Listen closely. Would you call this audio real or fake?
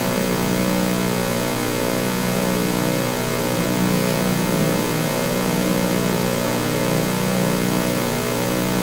fake